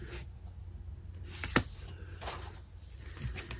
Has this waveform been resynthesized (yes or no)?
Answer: no